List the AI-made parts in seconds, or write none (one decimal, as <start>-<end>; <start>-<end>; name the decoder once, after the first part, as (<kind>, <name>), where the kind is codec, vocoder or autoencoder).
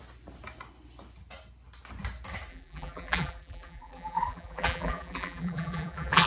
2.5-6.3 (vocoder, BigVGAN v2)